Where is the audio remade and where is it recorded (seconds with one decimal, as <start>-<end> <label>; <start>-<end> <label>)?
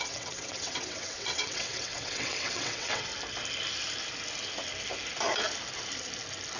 0.0-3.1 remade; 3.1-6.6 recorded